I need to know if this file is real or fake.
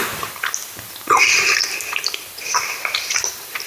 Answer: real